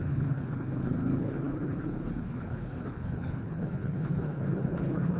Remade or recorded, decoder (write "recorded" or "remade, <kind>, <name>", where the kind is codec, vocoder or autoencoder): remade, codec, HILCodec